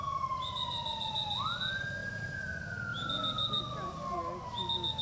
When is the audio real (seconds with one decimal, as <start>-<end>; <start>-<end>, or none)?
0.0-2.0; 2.5-5.0